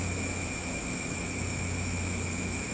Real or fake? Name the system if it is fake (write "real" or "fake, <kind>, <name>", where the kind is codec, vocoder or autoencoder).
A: fake, autoencoder, DAC-VAE